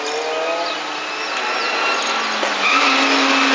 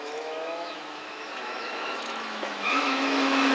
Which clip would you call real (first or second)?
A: first